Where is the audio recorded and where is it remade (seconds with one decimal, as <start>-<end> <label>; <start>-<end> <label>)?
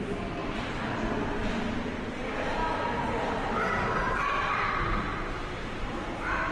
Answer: 0.0-0.4 recorded; 0.4-1.0 remade; 1.0-6.5 recorded